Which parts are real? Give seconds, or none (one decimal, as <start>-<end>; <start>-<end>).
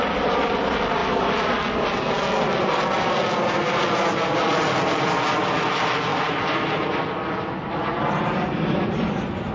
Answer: 0.0-9.5